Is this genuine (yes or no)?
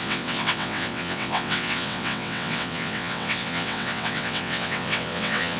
no